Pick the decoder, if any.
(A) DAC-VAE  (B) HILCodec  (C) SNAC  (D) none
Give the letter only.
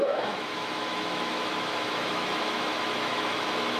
A